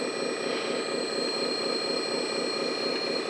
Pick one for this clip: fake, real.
real